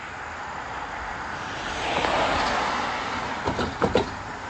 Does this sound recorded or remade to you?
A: recorded